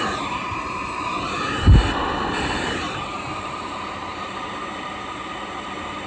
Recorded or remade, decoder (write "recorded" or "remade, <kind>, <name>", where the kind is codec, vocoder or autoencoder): remade, vocoder, BigVGAN v2